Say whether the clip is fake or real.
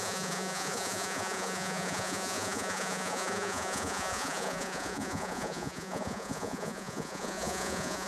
fake